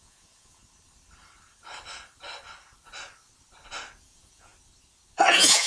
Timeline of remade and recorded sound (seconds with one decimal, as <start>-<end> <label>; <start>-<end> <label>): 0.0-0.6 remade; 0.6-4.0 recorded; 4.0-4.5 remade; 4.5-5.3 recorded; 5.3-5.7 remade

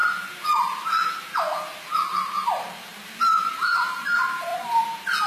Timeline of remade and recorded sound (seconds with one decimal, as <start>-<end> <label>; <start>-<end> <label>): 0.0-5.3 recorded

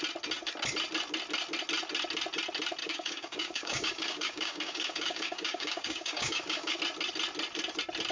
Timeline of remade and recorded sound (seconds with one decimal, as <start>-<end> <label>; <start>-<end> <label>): 0.0-2.8 recorded; 2.8-6.8 remade; 6.8-8.1 recorded

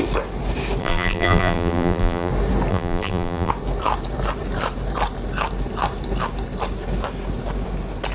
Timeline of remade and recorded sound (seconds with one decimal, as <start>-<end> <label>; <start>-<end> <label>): 0.0-0.8 recorded; 0.8-2.3 remade; 2.3-2.7 recorded; 2.7-3.5 remade; 3.5-8.1 recorded

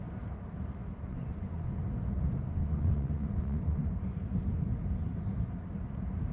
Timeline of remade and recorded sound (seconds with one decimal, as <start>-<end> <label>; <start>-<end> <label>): 0.0-1.1 recorded; 1.1-1.8 remade; 1.8-2.6 recorded; 2.6-3.9 remade; 3.9-6.3 recorded

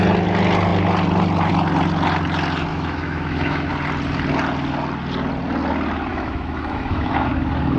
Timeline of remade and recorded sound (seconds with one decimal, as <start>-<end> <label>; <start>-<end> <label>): 0.0-2.7 recorded; 2.7-3.7 remade; 3.7-6.1 recorded; 6.1-7.3 remade; 7.3-7.8 recorded

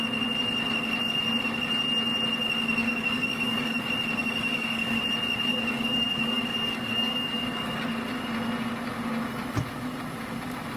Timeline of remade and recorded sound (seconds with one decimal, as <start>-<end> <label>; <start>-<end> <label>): 0.0-2.8 recorded; 2.8-3.8 remade; 3.8-4.2 recorded; 4.2-5.0 remade; 5.0-5.5 recorded; 5.5-8.0 remade; 8.0-10.8 recorded

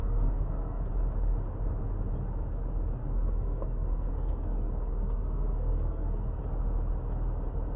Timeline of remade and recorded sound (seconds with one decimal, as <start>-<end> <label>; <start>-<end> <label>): 0.0-0.9 remade; 0.9-3.0 recorded; 3.0-6.4 remade; 6.4-7.8 recorded